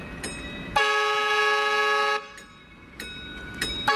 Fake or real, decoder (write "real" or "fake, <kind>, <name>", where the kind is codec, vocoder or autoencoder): real